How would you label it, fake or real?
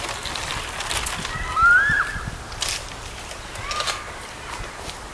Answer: real